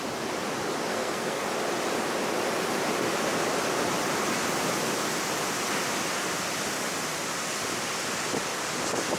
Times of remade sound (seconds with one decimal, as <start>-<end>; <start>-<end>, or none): 0.9-1.5